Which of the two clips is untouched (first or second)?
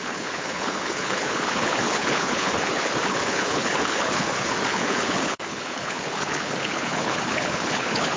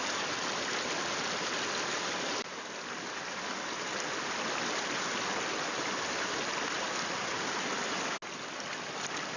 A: second